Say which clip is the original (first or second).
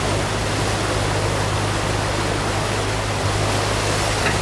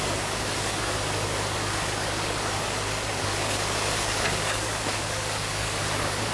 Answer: first